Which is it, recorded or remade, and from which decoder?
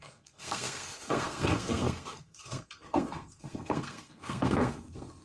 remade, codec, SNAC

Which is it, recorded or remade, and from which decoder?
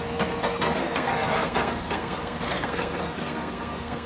remade, codec, SNAC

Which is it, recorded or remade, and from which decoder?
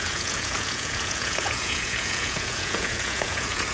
remade, vocoder, Vocos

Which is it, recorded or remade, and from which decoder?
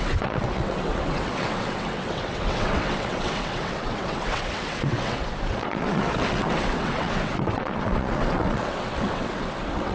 remade, vocoder, WaveNeXt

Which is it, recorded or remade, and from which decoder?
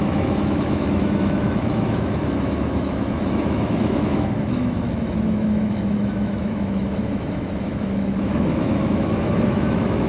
remade, autoencoder, DAC-VAE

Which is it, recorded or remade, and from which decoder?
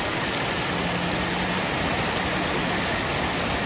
recorded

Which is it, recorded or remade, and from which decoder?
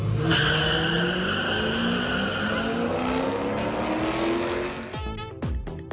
recorded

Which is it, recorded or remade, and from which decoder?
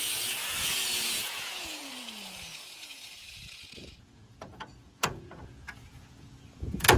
remade, vocoder, Vocos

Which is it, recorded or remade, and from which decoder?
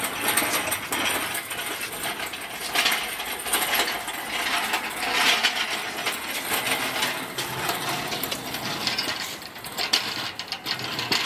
recorded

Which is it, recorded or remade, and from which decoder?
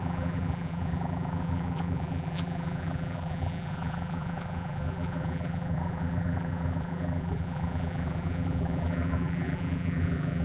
remade, vocoder, BigVGAN v2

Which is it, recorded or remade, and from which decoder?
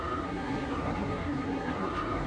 remade, codec, SNAC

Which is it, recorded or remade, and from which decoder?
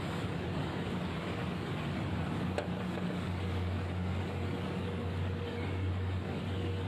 remade, codec, DAC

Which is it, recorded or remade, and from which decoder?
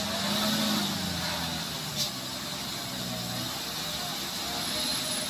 recorded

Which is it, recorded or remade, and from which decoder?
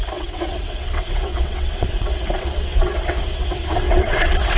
remade, vocoder, WaveNeXt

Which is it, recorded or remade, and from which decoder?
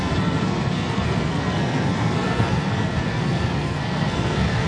remade, codec, SNAC